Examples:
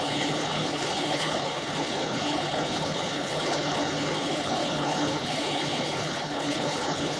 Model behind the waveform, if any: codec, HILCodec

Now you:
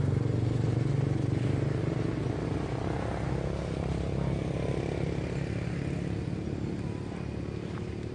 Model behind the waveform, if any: none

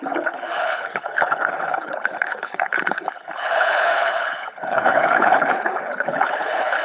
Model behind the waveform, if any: codec, HILCodec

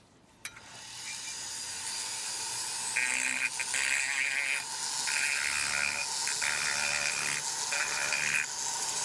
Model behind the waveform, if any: none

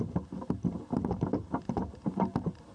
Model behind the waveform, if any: none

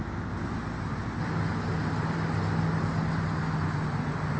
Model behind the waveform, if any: none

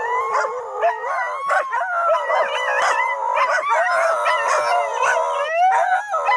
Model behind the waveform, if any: none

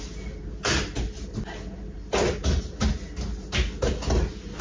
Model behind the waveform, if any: none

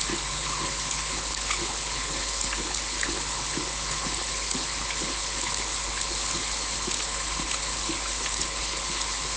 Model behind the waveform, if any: codec, HILCodec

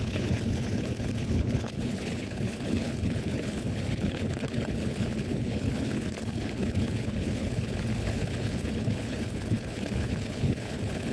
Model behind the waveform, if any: codec, HILCodec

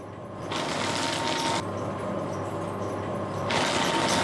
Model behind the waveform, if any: none